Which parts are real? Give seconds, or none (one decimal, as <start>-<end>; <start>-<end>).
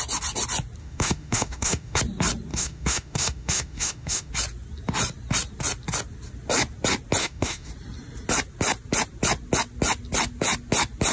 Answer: 0.0-0.8; 2.0-2.5; 4.3-7.2; 7.7-11.1